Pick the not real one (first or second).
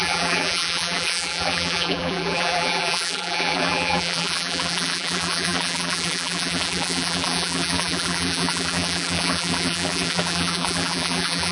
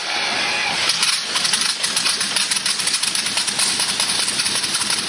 first